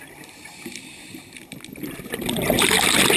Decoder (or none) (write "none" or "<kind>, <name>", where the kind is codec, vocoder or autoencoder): vocoder, BigVGAN v2